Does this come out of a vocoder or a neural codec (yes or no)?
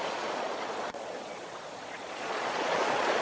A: yes